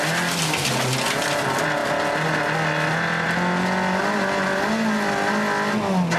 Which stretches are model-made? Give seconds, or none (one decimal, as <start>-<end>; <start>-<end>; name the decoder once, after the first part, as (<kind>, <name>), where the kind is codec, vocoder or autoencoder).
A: none